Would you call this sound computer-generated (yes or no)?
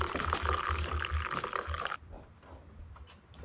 no